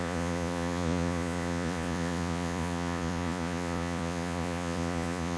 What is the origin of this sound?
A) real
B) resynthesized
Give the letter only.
B